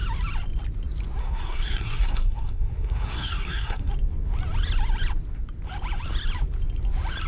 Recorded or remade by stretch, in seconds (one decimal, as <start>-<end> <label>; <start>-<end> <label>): 0.0-1.2 recorded; 1.2-3.9 remade; 3.9-7.3 recorded